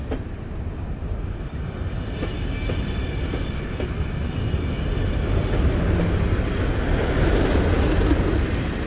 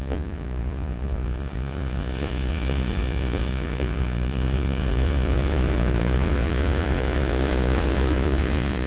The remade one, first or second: second